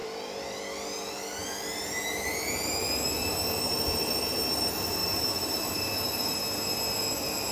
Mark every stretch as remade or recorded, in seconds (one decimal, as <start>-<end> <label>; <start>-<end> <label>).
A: 0.0-0.6 remade; 0.6-5.0 recorded; 5.0-6.3 remade; 6.3-7.5 recorded